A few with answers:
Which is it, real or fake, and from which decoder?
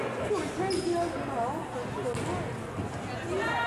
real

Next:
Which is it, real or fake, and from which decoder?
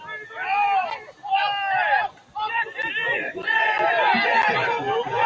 real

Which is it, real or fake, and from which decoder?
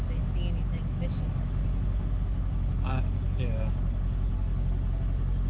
real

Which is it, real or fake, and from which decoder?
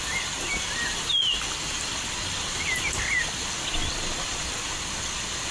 real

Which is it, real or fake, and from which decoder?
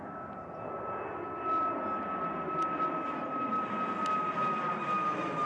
real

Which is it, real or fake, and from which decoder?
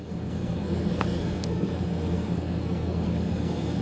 fake, codec, SNAC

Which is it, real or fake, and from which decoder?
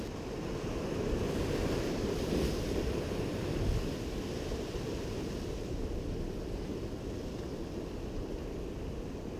real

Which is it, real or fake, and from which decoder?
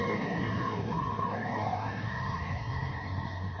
fake, codec, SNAC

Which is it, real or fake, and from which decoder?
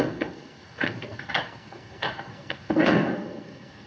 fake, codec, SNAC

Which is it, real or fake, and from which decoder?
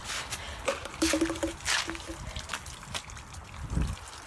real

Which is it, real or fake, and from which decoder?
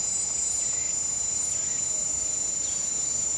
real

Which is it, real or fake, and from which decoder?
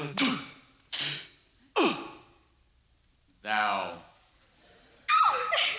real